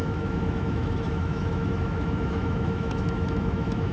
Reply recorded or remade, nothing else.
remade